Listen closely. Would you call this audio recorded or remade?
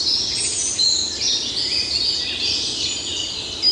recorded